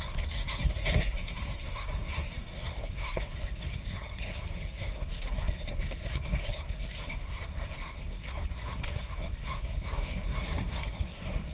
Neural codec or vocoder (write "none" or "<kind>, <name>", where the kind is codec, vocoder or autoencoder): codec, SNAC